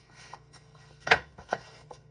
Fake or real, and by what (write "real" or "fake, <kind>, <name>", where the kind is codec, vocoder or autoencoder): fake, codec, SNAC